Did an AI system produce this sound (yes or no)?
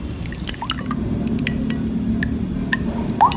no